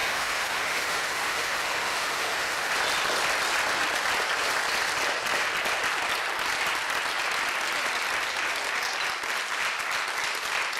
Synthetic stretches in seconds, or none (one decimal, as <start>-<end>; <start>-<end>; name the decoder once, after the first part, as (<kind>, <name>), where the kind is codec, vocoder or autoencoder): 0.0-2.7 (autoencoder, DAC-VAE)